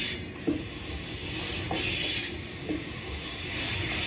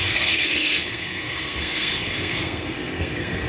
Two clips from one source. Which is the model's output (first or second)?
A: second